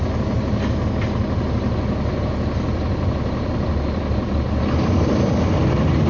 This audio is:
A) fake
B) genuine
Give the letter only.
B